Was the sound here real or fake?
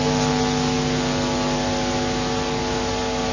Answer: real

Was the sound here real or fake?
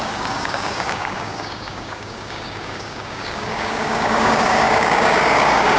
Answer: fake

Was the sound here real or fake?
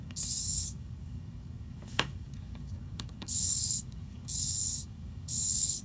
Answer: fake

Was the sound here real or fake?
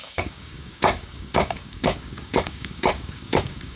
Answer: fake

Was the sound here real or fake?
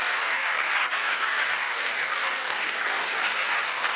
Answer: fake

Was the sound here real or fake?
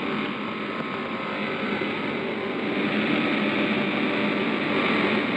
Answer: real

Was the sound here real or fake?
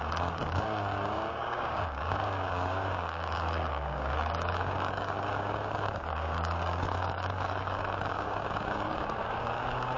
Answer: fake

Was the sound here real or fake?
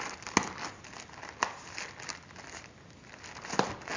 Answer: real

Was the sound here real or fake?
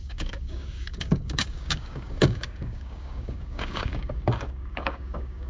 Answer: fake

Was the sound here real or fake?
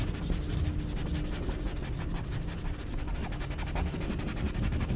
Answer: real